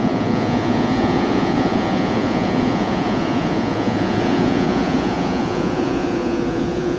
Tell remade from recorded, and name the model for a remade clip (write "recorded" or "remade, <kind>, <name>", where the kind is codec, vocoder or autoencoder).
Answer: remade, vocoder, Vocos